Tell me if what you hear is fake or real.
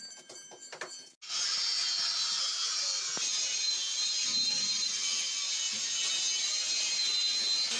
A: real